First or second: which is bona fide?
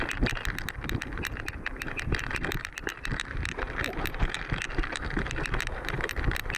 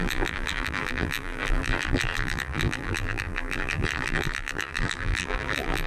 first